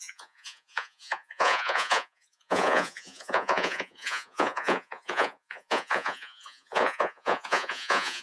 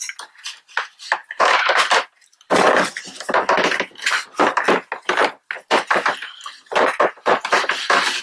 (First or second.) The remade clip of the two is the first